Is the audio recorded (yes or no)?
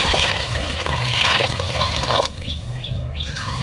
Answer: no